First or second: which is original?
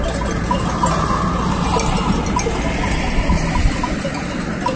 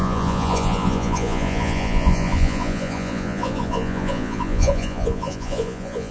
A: first